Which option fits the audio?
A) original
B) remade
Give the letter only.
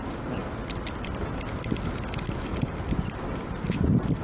A